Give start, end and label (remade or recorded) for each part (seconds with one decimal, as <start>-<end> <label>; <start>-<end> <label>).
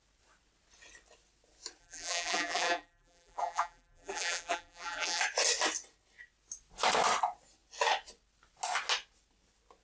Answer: 0.0-1.8 recorded; 1.8-5.2 remade; 5.2-9.8 recorded